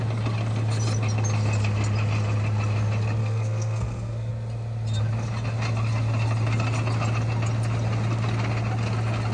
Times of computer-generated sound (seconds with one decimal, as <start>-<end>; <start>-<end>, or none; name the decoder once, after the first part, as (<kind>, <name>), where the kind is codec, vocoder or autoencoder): 3.2-4.3 (codec, SNAC)